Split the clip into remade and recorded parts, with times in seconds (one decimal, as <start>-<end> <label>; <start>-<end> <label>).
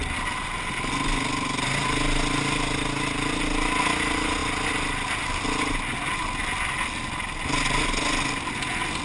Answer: 0.0-9.0 recorded